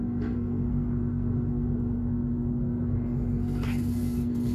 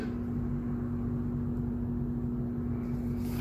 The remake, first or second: first